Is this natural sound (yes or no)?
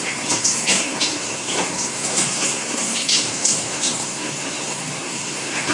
no